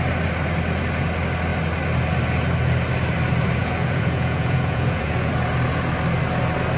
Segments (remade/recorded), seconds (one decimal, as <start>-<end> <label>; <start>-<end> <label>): 0.0-3.6 recorded; 3.6-5.3 remade; 5.3-6.8 recorded